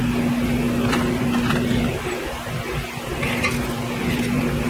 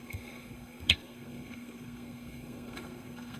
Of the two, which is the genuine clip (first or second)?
first